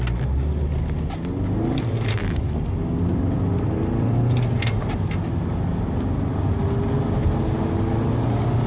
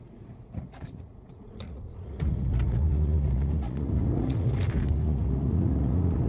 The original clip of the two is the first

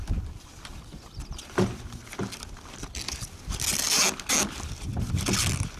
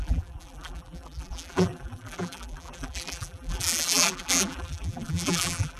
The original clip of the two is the first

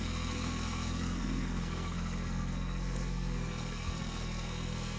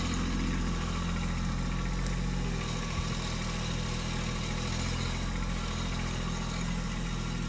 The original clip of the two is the second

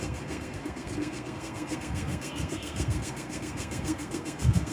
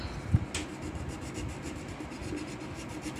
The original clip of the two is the second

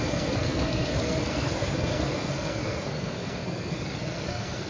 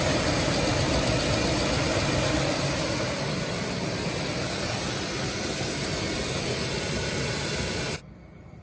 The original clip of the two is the second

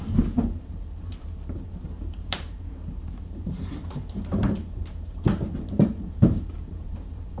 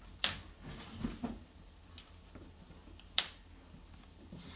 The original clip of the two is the second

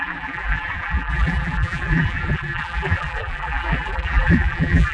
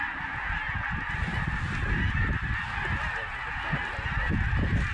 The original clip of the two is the second